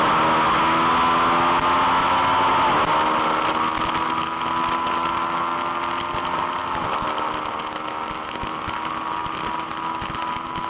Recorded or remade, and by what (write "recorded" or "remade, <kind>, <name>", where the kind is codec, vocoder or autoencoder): recorded